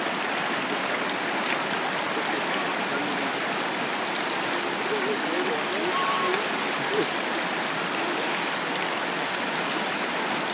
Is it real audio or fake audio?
real